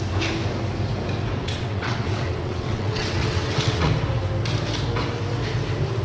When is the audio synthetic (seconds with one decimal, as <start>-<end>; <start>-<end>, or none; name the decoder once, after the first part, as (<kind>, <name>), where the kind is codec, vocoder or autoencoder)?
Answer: 1.4-3.9 (vocoder, WaveNeXt)